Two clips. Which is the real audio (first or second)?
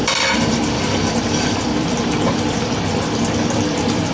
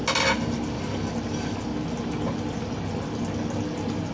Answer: second